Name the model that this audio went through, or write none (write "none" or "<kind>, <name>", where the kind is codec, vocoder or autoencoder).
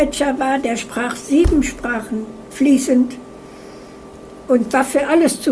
none